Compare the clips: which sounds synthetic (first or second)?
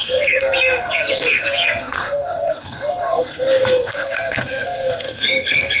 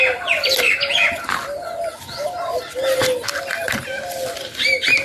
first